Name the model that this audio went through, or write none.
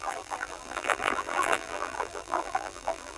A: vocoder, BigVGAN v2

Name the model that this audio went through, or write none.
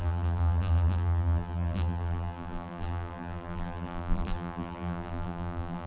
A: vocoder, BigVGAN v2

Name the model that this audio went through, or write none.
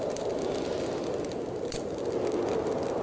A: none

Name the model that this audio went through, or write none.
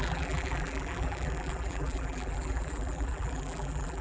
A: vocoder, BigVGAN v2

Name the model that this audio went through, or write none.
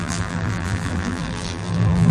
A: vocoder, BigVGAN v2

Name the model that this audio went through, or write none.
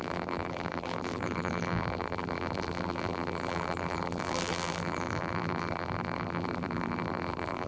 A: vocoder, BigVGAN v2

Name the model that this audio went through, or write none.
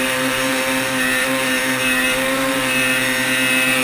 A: vocoder, BigVGAN v2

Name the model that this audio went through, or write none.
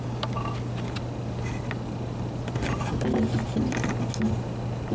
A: none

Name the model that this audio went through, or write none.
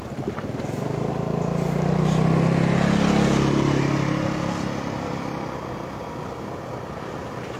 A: none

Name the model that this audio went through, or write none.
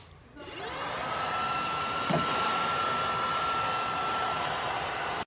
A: vocoder, BigVGAN v2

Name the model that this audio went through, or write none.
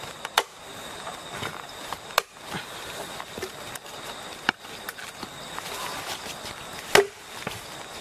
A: none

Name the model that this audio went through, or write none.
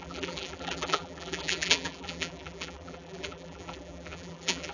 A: vocoder, BigVGAN v2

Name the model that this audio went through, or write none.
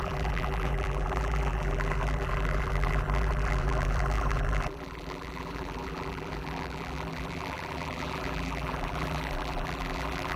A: vocoder, BigVGAN v2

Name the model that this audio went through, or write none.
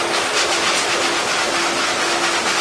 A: none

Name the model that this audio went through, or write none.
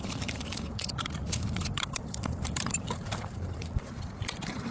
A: vocoder, BigVGAN v2